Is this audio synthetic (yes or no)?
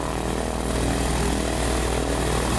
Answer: no